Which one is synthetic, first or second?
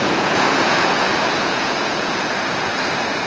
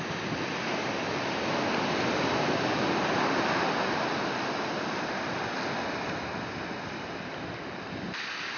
first